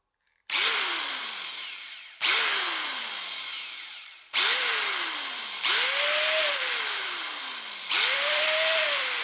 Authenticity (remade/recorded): remade